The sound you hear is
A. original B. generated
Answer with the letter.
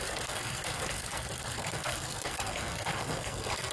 B